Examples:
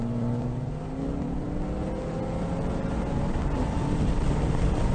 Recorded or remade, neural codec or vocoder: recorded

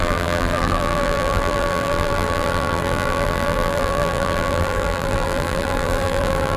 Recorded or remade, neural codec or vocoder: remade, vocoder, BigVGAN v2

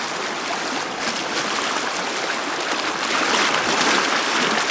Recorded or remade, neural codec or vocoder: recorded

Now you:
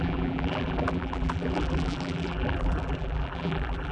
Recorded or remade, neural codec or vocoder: remade, vocoder, BigVGAN v2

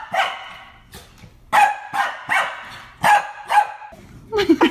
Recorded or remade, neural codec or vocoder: recorded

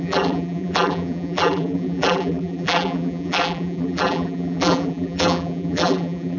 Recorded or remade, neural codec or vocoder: remade, vocoder, BigVGAN v2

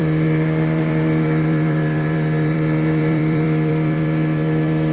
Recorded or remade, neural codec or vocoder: remade, vocoder, BigVGAN v2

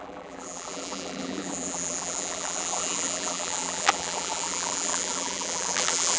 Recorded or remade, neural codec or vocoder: remade, vocoder, BigVGAN v2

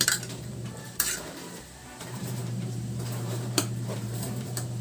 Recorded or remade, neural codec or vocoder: remade, vocoder, BigVGAN v2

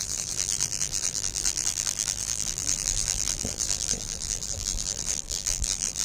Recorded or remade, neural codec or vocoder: remade, vocoder, BigVGAN v2